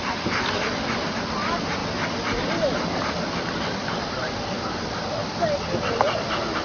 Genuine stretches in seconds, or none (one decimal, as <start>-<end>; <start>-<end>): 0.0-6.6